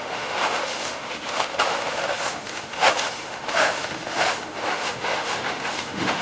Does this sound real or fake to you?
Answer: fake